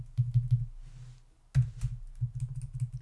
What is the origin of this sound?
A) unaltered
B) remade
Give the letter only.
A